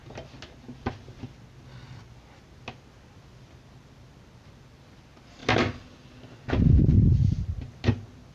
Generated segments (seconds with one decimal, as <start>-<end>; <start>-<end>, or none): none